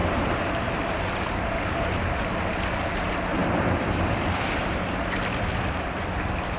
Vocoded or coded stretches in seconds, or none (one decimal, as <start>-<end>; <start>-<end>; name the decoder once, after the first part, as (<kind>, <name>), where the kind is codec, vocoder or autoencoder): 3.4-6.1 (vocoder, BigVGAN v2)